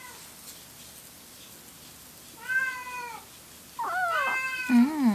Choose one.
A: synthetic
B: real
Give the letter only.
B